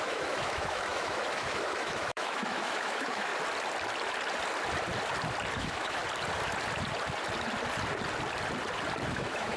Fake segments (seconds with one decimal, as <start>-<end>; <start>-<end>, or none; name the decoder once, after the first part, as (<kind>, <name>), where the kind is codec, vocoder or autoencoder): 0.0-3.3 (autoencoder, DAC-VAE); 5.6-6.0; 9.1-9.6